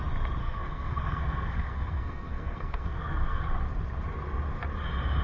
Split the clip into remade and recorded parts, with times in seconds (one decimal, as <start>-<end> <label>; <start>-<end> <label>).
0.0-0.4 recorded; 0.4-3.5 remade; 3.5-5.2 recorded